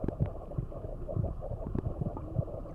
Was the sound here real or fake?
fake